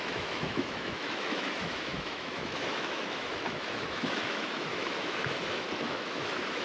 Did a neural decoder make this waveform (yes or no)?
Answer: yes